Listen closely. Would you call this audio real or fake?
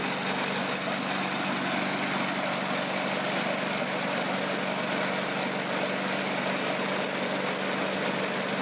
real